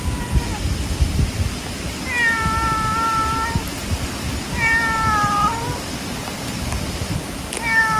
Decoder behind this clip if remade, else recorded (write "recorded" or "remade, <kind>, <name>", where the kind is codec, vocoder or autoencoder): recorded